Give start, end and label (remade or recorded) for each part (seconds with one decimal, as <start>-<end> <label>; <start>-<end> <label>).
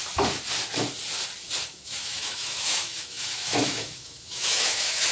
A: 0.0-1.7 recorded; 1.7-5.1 remade